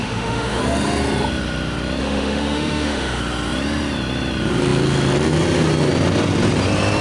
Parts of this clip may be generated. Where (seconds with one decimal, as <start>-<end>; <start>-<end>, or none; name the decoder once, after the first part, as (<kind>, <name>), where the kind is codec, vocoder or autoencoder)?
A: 0.0-0.6 (autoencoder, DAC-VAE); 2.0-3.2